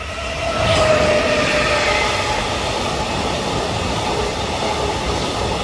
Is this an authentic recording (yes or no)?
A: yes